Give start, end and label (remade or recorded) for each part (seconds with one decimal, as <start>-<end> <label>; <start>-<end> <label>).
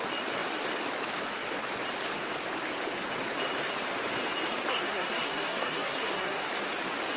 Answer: 0.0-4.7 recorded; 4.7-6.5 remade; 6.5-7.2 recorded